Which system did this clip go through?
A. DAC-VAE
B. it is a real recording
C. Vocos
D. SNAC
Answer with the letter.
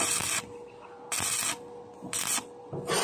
B